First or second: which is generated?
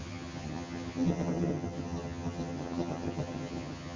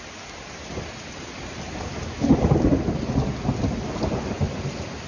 first